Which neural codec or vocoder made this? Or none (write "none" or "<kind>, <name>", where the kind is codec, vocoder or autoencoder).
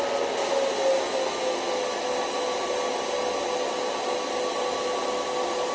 none